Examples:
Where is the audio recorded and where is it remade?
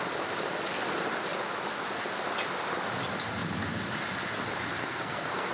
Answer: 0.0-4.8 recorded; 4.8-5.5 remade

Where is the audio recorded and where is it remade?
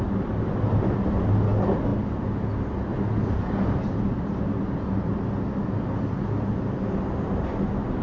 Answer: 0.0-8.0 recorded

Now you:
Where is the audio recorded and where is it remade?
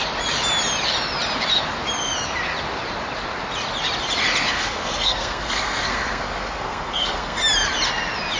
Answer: 0.0-4.5 recorded; 4.5-7.4 remade; 7.4-8.4 recorded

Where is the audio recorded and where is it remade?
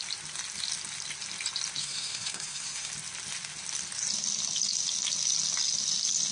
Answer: 0.0-1.8 recorded; 1.8-2.9 remade; 2.9-6.3 recorded